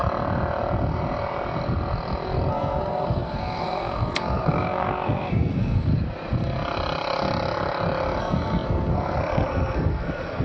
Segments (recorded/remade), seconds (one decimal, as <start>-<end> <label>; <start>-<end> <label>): 0.0-2.5 recorded; 2.5-5.9 remade; 5.9-8.2 recorded; 8.2-10.4 remade